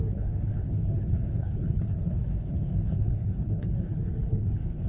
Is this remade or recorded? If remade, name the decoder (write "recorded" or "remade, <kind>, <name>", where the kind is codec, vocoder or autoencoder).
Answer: remade, codec, HILCodec